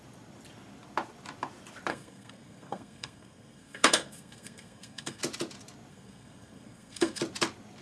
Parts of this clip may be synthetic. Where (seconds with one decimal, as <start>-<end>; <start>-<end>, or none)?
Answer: 1.9-5.2; 5.9-7.2